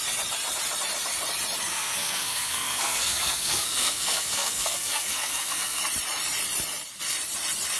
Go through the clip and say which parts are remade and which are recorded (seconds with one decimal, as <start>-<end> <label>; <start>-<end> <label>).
0.0-1.7 recorded; 1.7-5.8 remade; 5.8-7.8 recorded